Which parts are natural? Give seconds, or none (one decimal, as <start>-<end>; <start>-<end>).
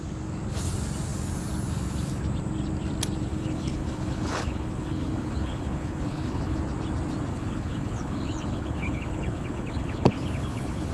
0.0-3.3; 6.6-7.3